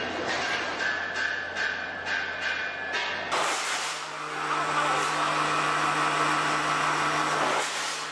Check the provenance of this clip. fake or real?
real